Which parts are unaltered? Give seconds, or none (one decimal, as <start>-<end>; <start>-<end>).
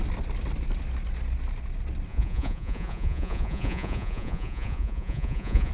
0.0-2.1